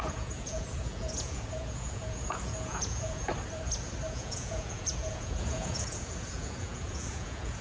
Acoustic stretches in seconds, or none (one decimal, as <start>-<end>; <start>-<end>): 3.3-4.1